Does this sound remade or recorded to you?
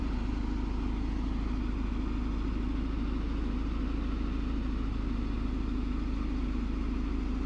recorded